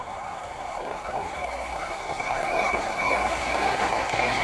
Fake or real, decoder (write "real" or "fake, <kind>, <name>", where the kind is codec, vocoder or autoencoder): fake, codec, SNAC